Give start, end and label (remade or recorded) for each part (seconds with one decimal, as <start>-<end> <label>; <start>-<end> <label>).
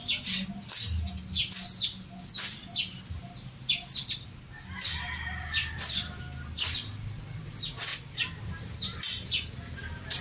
0.0-5.6 recorded; 5.6-6.2 remade; 6.2-7.9 recorded; 7.9-8.4 remade; 8.4-10.2 recorded